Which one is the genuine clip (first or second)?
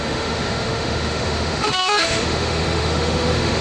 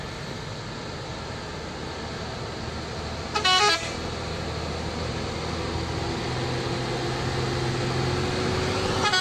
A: second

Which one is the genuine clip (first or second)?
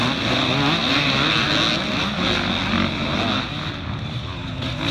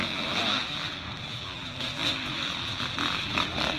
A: first